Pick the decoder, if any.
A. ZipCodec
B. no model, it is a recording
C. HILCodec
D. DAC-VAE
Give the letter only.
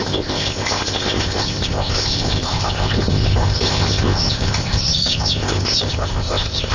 A